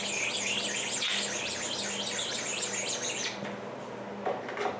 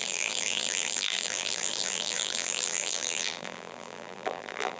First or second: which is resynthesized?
second